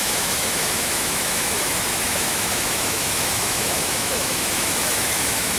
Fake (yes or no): yes